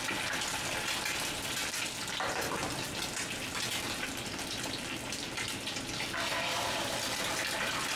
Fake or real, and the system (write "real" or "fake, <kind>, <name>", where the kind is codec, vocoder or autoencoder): real